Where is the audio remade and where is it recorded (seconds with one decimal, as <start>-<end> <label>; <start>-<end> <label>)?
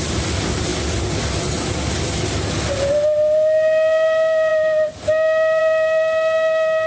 0.0-6.9 recorded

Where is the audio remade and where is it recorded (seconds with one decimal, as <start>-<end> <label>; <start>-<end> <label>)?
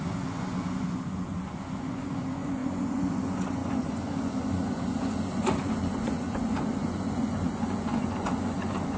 0.0-9.0 remade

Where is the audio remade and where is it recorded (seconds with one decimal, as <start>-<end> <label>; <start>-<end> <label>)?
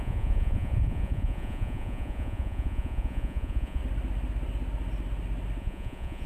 0.0-3.8 remade; 3.8-5.6 recorded; 5.6-6.3 remade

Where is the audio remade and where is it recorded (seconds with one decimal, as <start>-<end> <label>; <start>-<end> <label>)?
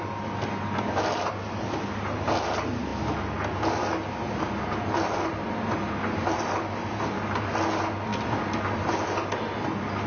0.0-10.1 recorded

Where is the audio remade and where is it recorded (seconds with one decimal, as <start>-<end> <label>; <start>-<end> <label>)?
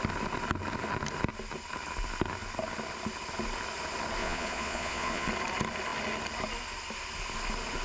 0.0-4.2 recorded; 4.2-5.3 remade; 5.3-7.8 recorded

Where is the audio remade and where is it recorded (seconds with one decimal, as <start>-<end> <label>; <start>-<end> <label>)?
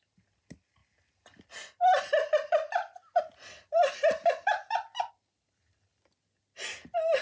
0.0-7.2 recorded